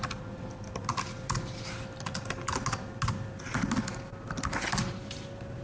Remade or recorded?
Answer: recorded